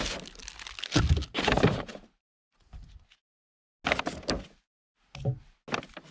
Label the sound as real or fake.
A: real